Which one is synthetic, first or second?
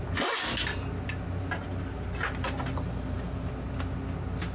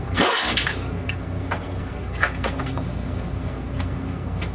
second